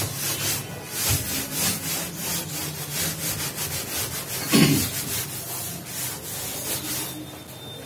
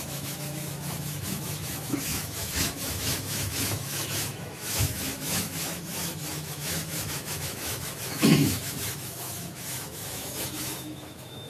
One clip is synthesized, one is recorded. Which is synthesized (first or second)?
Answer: second